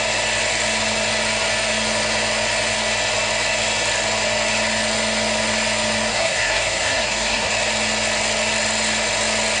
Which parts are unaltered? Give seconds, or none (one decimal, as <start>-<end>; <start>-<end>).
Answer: 0.0-6.1; 7.5-9.6